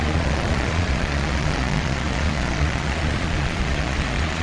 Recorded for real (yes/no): no